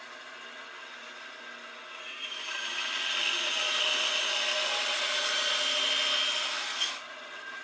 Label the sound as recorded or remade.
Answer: recorded